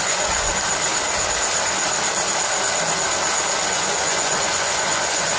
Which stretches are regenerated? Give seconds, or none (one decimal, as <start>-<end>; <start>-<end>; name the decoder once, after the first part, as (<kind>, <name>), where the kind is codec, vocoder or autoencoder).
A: 0.0-0.5 (vocoder, Vocos); 3.7-5.4